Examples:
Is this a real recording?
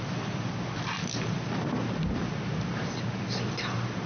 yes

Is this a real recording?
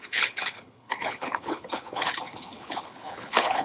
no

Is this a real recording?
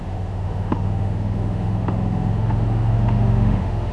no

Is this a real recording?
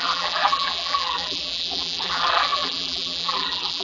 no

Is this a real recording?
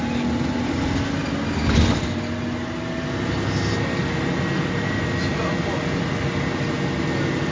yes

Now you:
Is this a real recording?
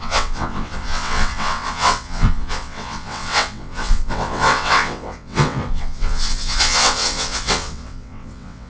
no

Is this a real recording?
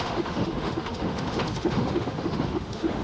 no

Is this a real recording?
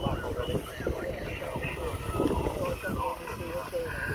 yes